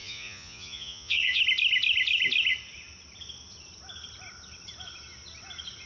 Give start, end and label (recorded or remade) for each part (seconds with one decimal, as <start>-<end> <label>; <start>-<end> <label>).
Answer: 0.0-1.4 remade; 1.4-5.9 recorded